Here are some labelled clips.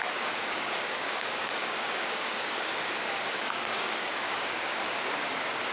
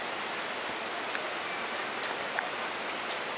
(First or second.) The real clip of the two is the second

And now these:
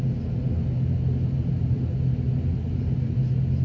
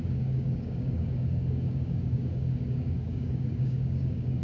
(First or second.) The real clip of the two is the first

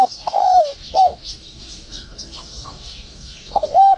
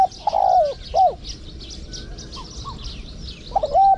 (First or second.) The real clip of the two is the second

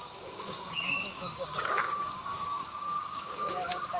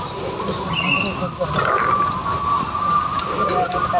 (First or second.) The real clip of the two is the second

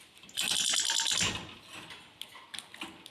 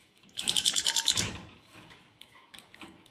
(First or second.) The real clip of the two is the first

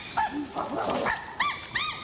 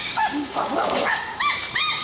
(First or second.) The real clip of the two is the first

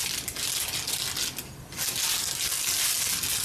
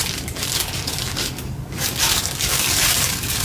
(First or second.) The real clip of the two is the first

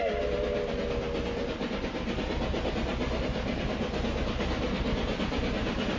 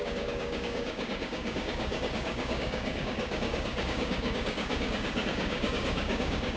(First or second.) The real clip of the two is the first